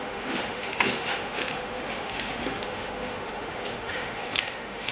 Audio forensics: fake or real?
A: fake